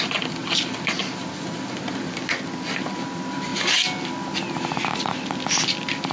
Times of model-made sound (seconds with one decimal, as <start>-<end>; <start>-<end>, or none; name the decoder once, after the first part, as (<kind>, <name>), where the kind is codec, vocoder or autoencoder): none